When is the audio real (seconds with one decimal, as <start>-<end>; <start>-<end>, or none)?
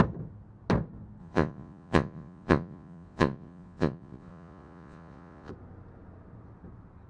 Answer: 0.0-1.2; 5.5-7.1